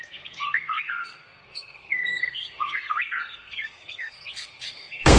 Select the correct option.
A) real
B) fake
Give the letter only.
B